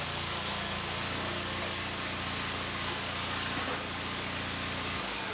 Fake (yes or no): yes